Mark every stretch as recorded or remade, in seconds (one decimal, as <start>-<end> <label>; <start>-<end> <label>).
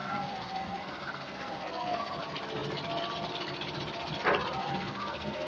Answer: 0.0-2.2 remade; 2.2-4.6 recorded; 4.6-5.5 remade